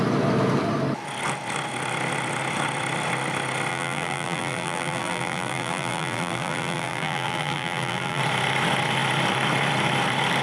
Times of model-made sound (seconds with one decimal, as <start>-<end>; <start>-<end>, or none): 3.7-8.2